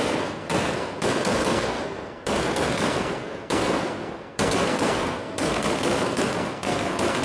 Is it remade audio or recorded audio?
remade